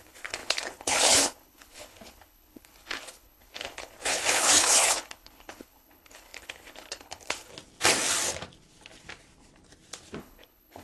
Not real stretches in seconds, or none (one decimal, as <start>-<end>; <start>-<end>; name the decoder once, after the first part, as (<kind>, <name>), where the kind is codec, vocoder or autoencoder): 0.0-7.5 (codec, HILCodec); 10.2-10.8